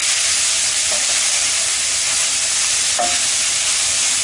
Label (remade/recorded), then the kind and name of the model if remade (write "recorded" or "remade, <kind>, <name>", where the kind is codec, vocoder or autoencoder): recorded